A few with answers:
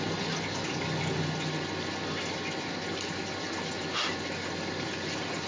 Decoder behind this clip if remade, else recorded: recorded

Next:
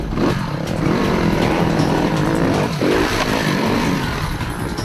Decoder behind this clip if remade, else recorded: remade, vocoder, BigVGAN v2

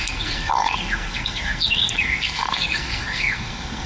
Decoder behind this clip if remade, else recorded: remade, codec, SNAC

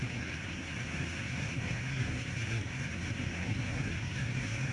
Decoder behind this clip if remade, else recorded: remade, codec, SNAC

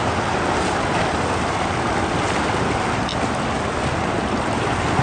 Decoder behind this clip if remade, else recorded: recorded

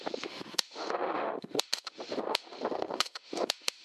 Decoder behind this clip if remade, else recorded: remade, autoencoder, DAC-VAE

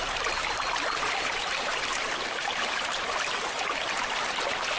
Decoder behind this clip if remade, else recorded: recorded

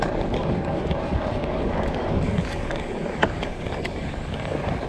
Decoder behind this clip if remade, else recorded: remade, codec, DAC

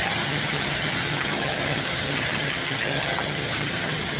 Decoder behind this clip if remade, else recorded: remade, vocoder, HiFi-GAN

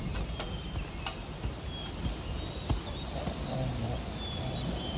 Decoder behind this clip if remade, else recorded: recorded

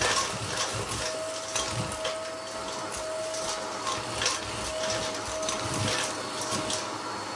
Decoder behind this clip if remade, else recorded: recorded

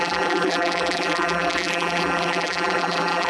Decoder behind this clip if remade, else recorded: remade, vocoder, BigVGAN v2